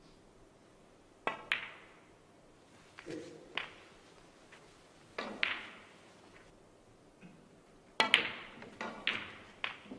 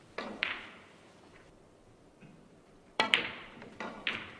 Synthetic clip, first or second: second